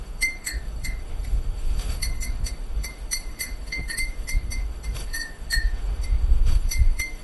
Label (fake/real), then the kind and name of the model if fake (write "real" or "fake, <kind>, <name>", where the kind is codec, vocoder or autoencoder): fake, autoencoder, DAC-VAE